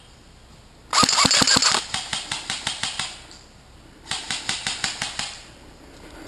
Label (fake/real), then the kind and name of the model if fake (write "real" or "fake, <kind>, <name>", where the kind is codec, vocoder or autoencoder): real